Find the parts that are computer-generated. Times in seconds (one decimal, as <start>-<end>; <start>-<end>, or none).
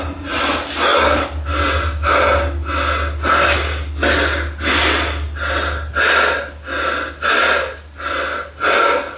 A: none